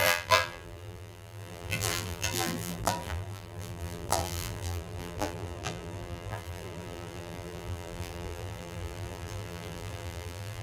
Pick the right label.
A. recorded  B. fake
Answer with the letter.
B